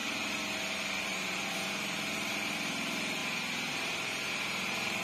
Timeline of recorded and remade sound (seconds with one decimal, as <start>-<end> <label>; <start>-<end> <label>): 0.0-1.0 recorded; 1.0-3.2 remade; 3.2-3.7 recorded; 3.7-5.0 remade